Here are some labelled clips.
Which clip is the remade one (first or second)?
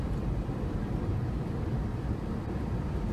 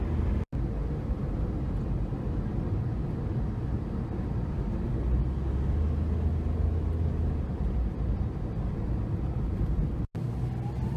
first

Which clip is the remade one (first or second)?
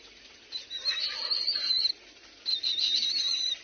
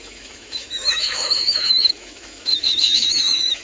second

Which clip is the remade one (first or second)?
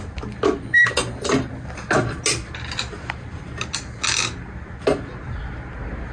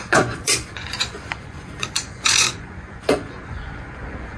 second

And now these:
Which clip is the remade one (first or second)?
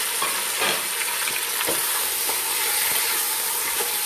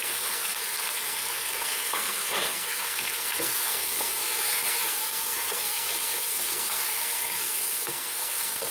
second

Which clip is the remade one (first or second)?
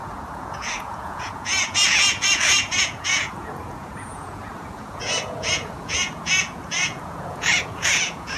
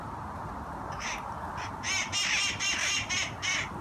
first